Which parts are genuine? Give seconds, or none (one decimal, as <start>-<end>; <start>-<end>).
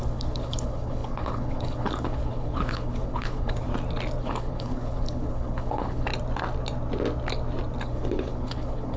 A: 3.7-4.2; 6.1-7.8